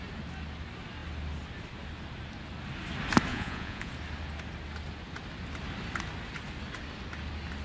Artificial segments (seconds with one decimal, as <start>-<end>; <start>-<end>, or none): 3.3-3.9